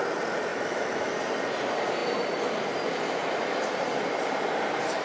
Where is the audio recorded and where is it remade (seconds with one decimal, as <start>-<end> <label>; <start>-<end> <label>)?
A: 0.0-0.5 recorded; 0.5-1.1 remade; 1.1-5.0 recorded